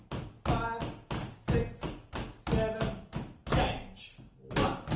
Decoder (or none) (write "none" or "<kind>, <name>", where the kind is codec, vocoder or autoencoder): none